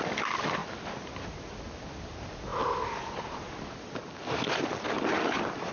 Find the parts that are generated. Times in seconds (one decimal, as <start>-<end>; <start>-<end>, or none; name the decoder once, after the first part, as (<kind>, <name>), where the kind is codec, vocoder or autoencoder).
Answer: none